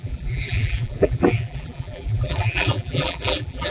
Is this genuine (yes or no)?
no